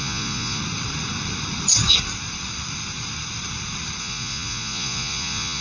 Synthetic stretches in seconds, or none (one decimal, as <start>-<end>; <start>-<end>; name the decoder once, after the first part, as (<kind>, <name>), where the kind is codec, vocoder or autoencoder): 0.0-0.6 (vocoder, Vocos); 4.0-5.6

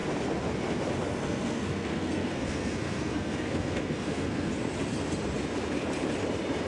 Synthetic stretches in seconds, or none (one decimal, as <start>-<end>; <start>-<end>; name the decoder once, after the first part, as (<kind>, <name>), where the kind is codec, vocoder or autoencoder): 1.1-4.5 (codec, SNAC)

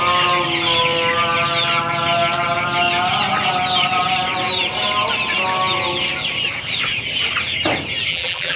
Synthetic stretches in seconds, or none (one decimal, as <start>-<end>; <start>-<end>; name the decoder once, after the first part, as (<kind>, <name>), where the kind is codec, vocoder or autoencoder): 8.1-8.6 (vocoder, BigVGAN v2)